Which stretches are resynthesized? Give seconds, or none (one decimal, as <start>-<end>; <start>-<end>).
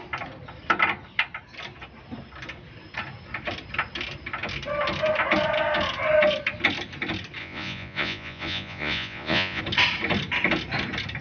7.4-9.6